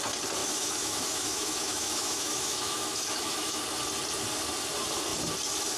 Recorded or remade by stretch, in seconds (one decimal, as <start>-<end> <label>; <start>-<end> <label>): 0.0-0.4 recorded; 0.4-3.6 remade; 3.6-5.8 recorded